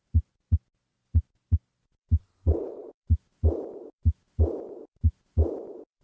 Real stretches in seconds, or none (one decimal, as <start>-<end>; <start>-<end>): 0.0-2.2; 2.9-6.0